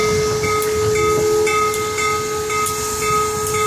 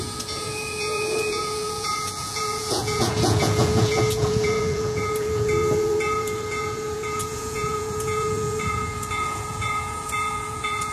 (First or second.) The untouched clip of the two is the first